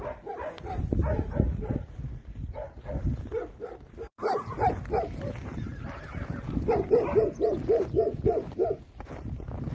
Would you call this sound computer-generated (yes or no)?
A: no